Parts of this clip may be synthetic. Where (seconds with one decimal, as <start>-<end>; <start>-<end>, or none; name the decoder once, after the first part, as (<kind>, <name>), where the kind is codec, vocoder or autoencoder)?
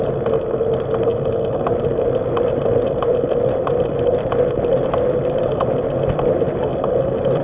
none